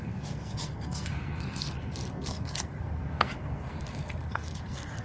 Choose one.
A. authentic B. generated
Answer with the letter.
B